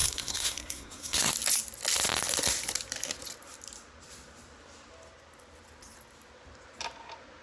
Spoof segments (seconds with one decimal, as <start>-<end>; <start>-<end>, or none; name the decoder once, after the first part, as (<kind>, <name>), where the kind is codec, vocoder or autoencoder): 0.0-1.3 (codec, SNAC)

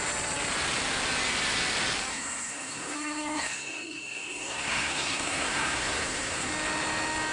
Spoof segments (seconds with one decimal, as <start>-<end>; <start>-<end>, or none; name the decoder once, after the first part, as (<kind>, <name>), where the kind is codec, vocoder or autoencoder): 2.1-6.5 (codec, SNAC)